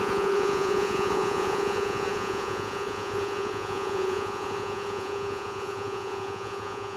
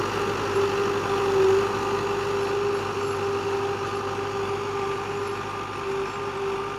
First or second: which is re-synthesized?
first